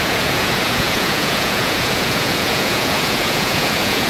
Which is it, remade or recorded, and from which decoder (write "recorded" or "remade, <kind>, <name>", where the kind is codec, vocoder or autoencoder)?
remade, vocoder, Vocos